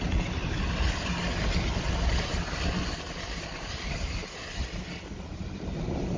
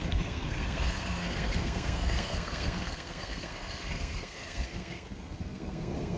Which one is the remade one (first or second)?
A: second